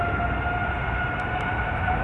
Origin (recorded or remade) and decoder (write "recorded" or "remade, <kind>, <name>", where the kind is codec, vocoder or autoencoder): recorded